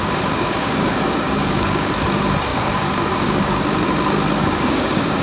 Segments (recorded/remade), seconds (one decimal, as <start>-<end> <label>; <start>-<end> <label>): 0.0-1.9 remade; 1.9-2.5 recorded; 2.5-3.6 remade; 3.6-4.4 recorded; 4.4-5.2 remade